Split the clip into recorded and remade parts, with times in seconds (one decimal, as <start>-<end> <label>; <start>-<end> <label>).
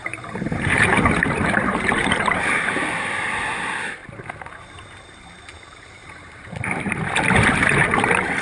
0.0-2.9 remade; 2.9-4.0 recorded; 4.0-5.3 remade; 5.3-6.0 recorded; 6.0-7.0 remade; 7.0-8.4 recorded